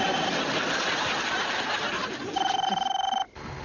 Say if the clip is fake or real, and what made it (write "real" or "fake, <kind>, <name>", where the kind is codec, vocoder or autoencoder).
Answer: real